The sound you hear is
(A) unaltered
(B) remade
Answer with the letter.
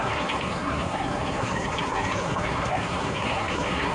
B